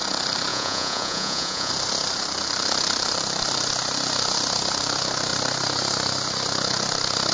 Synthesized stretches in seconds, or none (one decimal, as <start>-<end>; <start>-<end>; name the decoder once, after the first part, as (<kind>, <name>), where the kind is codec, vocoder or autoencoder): 0.5-1.7 (vocoder, Vocos)

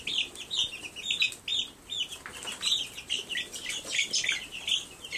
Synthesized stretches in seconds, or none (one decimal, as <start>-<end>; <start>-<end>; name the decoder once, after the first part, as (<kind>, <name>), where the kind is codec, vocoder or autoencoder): none

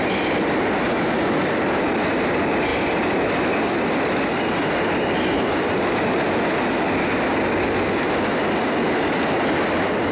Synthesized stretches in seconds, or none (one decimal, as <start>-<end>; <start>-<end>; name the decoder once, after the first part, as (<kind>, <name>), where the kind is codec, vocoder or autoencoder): none

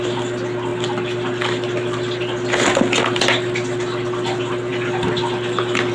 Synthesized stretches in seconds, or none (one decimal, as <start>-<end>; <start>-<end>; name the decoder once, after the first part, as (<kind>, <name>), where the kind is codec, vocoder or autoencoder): none